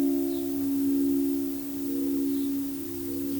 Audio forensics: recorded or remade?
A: recorded